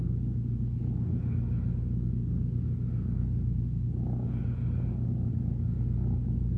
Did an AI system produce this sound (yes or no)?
no